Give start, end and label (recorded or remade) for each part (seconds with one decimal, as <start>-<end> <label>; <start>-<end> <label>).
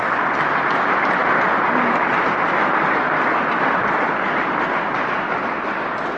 0.0-6.2 recorded